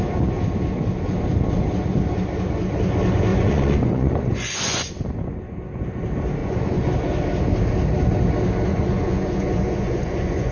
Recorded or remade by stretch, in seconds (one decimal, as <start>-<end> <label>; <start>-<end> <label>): 0.0-3.3 recorded; 3.3-4.9 remade; 4.9-6.4 recorded; 6.4-6.9 remade; 6.9-8.7 recorded; 8.7-10.5 remade